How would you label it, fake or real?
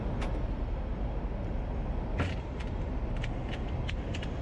real